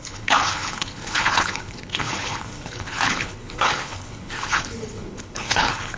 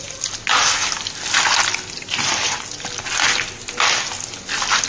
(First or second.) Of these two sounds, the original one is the second